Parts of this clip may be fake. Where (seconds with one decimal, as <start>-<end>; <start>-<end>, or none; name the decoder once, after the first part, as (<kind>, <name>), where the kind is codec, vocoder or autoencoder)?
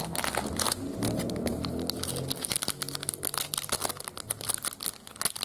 none